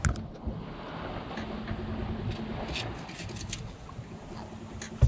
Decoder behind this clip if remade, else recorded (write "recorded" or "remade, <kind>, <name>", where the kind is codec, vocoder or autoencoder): recorded